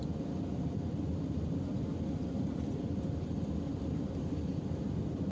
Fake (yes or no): no